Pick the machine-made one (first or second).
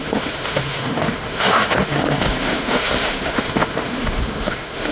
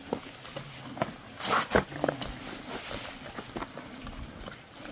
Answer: first